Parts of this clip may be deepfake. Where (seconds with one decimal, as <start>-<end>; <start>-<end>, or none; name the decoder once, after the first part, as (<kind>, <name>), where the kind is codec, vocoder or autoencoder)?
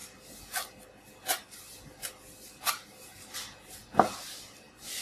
none